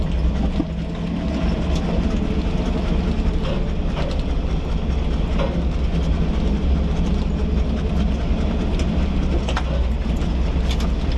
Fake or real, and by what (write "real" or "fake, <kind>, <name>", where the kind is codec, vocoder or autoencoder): real